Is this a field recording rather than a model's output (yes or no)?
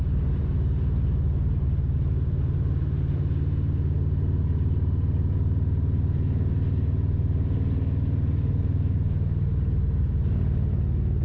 yes